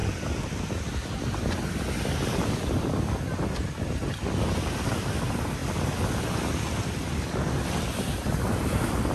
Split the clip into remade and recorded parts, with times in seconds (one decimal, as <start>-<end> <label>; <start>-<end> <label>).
0.0-9.1 recorded